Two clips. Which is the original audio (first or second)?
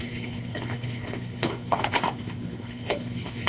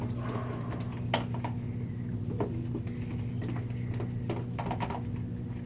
second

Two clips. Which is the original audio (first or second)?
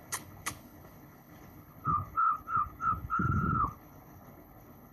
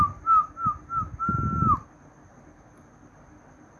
second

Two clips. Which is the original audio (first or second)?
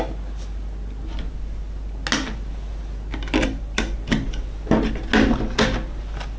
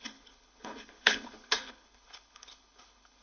first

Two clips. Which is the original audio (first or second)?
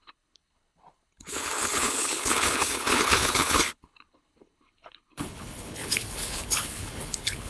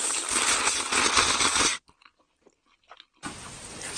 second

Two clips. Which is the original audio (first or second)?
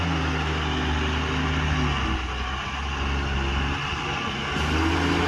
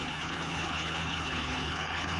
first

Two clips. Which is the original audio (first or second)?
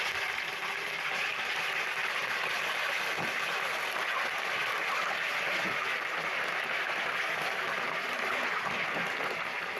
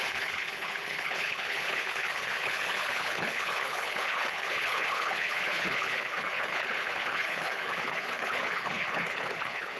first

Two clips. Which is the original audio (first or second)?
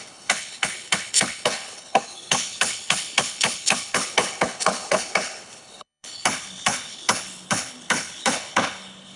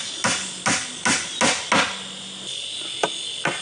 second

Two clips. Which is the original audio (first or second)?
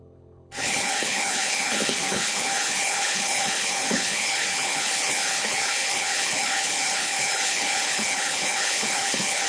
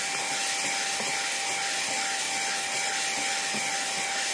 second